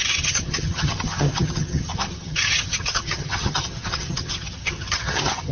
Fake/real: fake